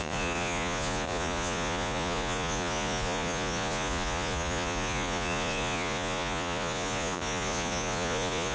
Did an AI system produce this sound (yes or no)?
yes